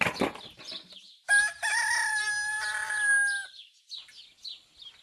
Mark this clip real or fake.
real